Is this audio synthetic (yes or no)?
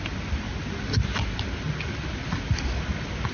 no